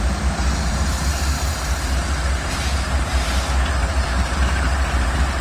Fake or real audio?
fake